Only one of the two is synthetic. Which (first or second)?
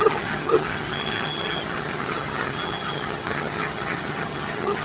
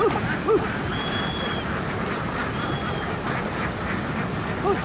first